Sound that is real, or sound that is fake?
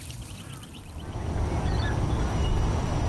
real